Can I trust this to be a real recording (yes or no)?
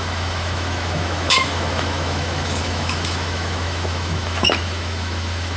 no